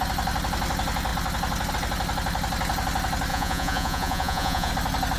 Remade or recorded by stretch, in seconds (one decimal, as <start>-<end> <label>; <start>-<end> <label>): 0.0-3.3 recorded; 3.3-4.7 remade; 4.7-5.2 recorded